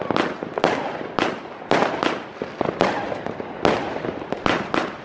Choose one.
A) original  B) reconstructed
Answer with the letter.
A